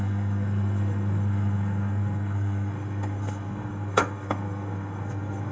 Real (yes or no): no